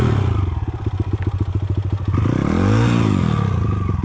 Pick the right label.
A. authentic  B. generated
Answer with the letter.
A